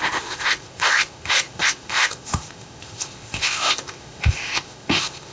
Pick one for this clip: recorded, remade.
remade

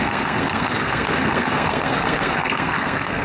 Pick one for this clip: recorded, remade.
remade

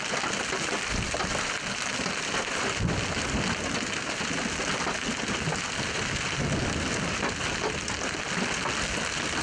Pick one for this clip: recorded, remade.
recorded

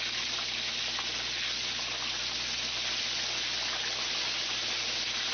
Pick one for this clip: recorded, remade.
recorded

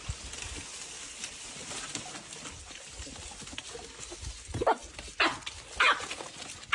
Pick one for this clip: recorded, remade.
recorded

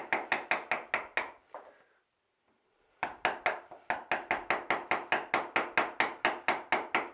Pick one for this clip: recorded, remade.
recorded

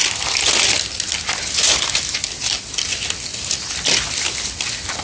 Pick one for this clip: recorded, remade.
recorded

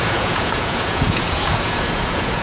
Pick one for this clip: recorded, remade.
remade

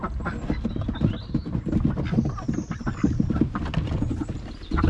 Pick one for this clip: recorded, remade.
recorded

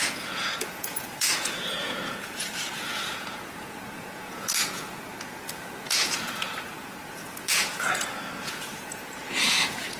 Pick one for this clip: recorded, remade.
remade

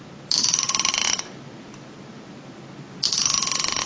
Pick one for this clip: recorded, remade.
recorded